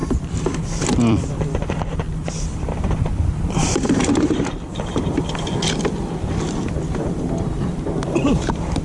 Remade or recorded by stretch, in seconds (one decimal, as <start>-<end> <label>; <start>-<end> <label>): 0.0-5.3 remade; 5.3-8.8 recorded